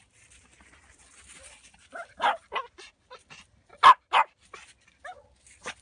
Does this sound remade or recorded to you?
recorded